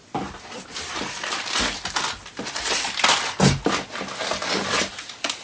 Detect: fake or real real